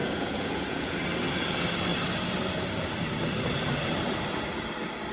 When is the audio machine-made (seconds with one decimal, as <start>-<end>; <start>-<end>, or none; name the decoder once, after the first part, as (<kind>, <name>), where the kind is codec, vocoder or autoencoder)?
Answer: 0.0-1.0 (vocoder, Vocos)